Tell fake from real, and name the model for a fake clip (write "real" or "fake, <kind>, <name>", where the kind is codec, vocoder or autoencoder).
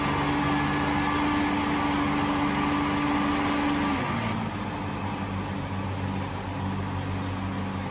real